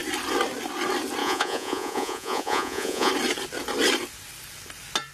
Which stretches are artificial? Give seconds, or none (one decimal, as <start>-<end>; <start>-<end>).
1.2-3.1